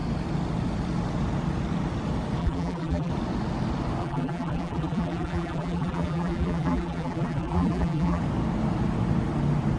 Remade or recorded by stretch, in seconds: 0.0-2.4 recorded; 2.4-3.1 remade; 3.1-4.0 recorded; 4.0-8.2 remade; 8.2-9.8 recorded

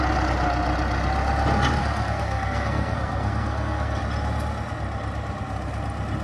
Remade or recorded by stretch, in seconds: 0.0-1.8 recorded; 1.8-4.0 remade; 4.0-6.2 recorded

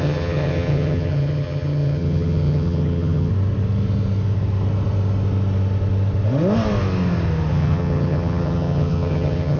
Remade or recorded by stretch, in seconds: 0.0-3.3 remade; 3.3-7.5 recorded; 7.5-9.6 remade

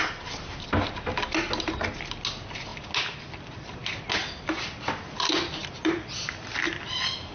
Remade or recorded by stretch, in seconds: 0.0-7.3 recorded

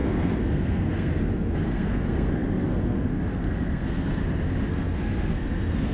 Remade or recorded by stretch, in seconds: 0.0-4.2 remade; 4.2-4.7 recorded; 4.7-5.9 remade

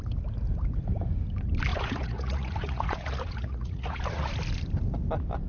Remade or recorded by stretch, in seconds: 0.0-1.7 recorded; 1.7-4.3 remade; 4.3-5.5 recorded